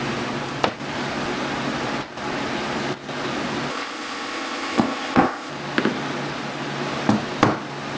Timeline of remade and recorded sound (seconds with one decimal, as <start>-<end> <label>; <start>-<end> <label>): 0.0-3.7 recorded; 3.7-5.5 remade; 5.5-8.0 recorded